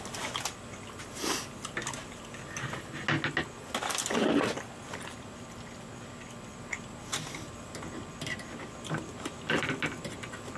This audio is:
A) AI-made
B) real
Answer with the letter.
B